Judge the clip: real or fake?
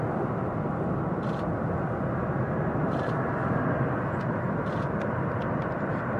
real